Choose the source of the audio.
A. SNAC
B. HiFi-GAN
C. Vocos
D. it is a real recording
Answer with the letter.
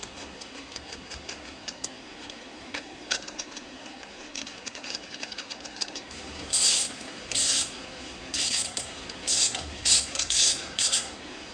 A